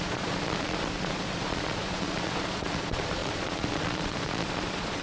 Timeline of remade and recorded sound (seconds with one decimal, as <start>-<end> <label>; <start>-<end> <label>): 0.0-5.0 remade

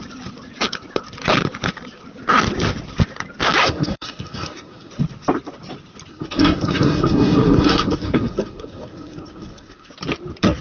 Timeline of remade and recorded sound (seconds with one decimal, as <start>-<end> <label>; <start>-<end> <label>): 0.0-3.6 recorded; 3.6-4.9 remade; 4.9-6.1 recorded; 6.1-9.9 remade; 9.9-10.6 recorded